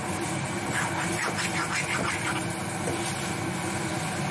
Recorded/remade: recorded